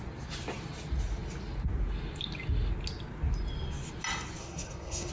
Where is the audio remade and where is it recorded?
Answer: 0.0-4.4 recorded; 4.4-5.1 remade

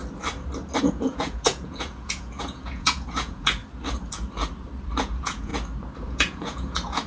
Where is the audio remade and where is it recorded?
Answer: 0.0-0.8 recorded; 0.8-3.6 remade; 3.6-5.0 recorded; 5.0-5.5 remade; 5.5-6.0 recorded; 6.0-7.1 remade

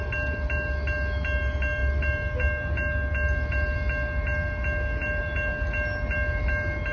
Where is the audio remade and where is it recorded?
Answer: 0.0-6.9 recorded